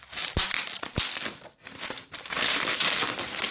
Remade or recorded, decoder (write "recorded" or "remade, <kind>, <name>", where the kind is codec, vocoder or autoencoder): recorded